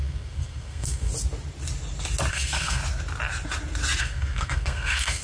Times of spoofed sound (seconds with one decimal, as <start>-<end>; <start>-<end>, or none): 0.0-1.1; 2.3-2.8; 4.0-5.2